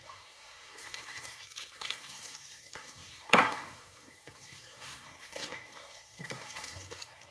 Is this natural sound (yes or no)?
no